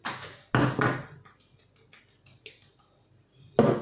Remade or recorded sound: recorded